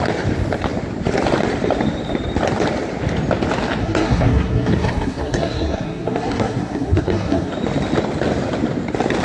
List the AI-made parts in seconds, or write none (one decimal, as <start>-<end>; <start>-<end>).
3.8-7.5

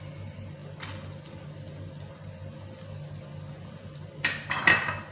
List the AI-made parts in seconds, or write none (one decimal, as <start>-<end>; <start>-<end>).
none

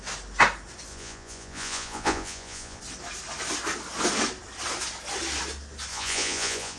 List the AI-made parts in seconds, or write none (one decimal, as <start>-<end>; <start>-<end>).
0.9-2.8; 5.9-6.8

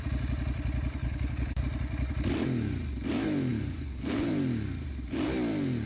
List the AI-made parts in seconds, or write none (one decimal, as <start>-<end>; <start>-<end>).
1.0-1.6; 3.5-4.3